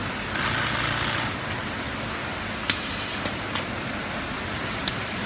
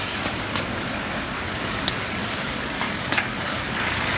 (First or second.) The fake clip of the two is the second